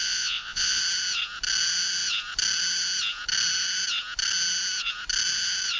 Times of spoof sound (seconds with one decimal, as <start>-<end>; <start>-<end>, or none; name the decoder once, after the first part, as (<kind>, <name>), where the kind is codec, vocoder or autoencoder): 0.0-0.8 (vocoder, Vocos)